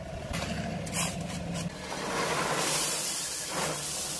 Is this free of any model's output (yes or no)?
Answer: yes